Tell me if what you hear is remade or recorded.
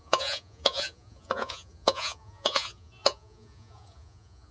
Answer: remade